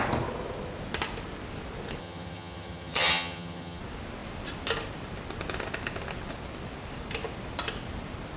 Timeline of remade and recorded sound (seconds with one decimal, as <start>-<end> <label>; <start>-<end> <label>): 0.0-2.0 recorded; 2.0-3.8 remade; 3.8-8.4 recorded

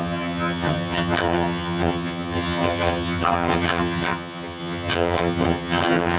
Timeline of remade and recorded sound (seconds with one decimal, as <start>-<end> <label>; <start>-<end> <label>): 0.0-6.2 remade

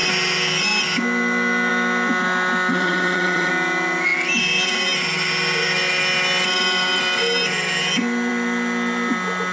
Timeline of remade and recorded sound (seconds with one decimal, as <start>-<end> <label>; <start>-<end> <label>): 0.0-2.7 recorded; 2.7-3.5 remade; 3.5-9.5 recorded

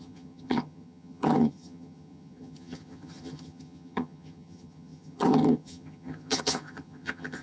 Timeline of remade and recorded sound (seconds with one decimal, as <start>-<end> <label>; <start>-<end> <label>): 0.0-7.4 remade

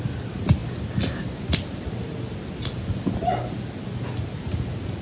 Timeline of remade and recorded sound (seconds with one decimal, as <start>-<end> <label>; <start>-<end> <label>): 0.0-5.0 recorded

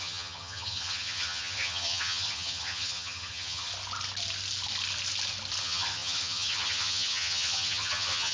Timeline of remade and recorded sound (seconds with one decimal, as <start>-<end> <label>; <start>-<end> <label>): 0.0-3.7 remade; 3.7-5.6 recorded; 5.6-8.3 remade

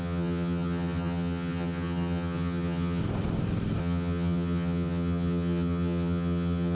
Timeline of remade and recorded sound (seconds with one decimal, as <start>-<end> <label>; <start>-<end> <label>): 0.0-3.0 remade; 3.0-3.8 recorded; 3.8-6.7 remade

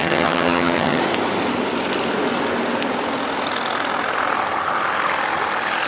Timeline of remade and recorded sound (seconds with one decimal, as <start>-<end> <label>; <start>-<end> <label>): 0.0-1.0 remade; 1.0-5.9 recorded